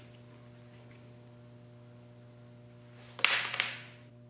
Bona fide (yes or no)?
yes